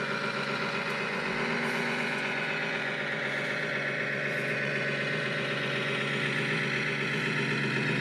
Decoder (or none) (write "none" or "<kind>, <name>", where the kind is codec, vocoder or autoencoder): vocoder, Vocos